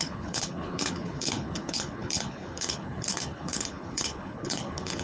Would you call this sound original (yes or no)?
no